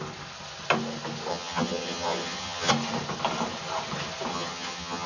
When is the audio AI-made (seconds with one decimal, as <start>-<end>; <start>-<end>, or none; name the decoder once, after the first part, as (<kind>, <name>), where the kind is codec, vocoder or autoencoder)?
1.3-2.7 (vocoder, HiFi-GAN); 4.3-5.1